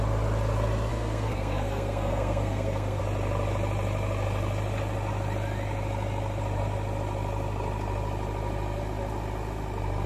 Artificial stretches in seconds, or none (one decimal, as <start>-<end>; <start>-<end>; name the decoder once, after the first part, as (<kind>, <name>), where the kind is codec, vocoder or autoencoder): 0.9-3.0 (codec, SNAC)